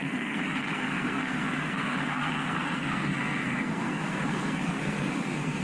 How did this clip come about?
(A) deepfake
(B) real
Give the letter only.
A